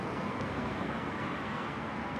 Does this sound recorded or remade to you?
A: remade